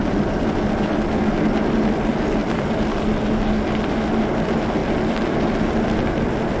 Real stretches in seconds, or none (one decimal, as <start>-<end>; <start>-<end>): 1.1-2.4; 3.2-4.8